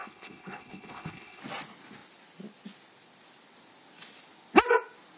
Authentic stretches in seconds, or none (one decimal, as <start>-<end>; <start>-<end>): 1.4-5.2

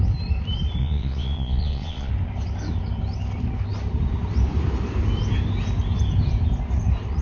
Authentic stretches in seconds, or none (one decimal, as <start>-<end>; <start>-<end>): 0.0-0.8; 2.1-7.2

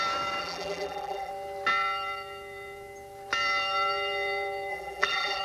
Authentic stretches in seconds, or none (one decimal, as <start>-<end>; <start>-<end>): 0.0-0.4; 1.3-4.7

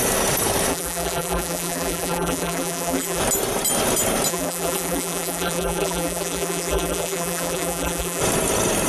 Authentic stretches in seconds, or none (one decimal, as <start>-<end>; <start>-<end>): 0.0-0.7; 3.2-4.3; 8.2-8.9